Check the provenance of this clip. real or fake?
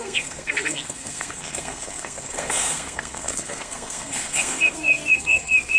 fake